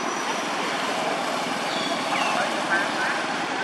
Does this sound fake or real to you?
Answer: fake